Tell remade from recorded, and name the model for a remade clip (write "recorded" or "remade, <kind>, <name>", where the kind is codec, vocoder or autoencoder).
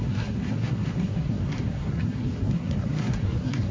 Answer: remade, codec, SNAC